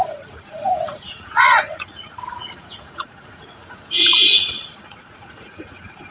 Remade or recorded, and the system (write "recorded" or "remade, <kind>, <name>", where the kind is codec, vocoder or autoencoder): remade, vocoder, Vocos